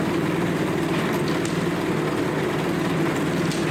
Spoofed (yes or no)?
no